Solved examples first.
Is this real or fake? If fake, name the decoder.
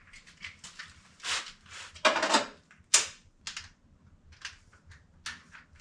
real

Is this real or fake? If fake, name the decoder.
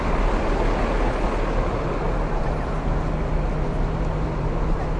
real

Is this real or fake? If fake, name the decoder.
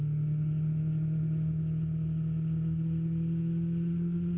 real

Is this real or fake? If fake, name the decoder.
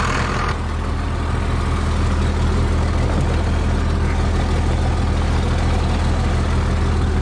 real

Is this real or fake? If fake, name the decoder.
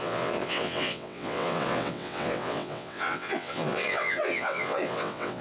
fake, vocoder, WaveNeXt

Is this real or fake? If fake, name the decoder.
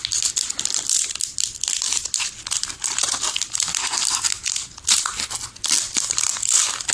real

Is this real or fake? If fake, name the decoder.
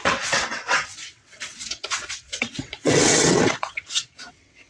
fake, vocoder, WaveNeXt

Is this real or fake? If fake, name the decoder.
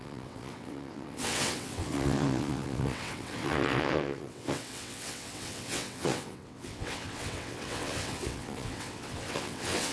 fake, vocoder, WaveNeXt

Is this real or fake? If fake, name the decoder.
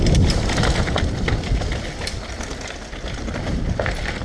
real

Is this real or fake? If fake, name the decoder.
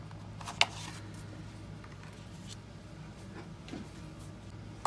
real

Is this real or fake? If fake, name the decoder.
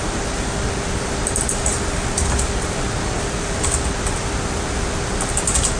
real